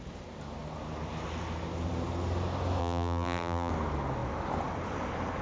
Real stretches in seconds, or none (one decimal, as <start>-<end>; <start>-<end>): 0.0-2.8; 3.7-5.4